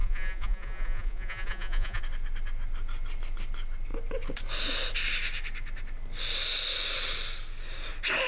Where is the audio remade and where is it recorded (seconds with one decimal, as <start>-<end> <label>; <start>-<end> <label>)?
0.0-2.0 remade; 2.0-8.3 recorded